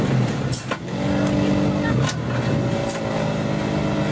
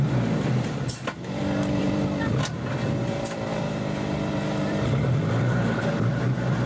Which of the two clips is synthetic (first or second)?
second